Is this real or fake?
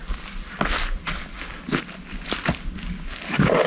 real